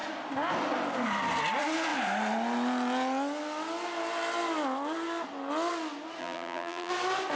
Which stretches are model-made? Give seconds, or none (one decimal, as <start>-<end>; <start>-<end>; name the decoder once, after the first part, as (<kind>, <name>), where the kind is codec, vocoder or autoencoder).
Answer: 6.2-6.9 (vocoder, BigVGAN v2)